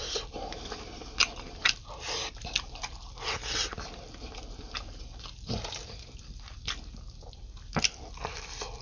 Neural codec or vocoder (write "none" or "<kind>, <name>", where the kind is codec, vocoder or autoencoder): vocoder, BigVGAN v2